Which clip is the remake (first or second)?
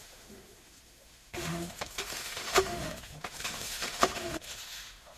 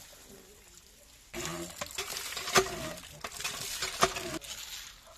first